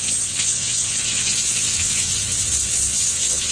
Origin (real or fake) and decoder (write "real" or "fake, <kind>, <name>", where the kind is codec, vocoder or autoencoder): fake, vocoder, WaveNeXt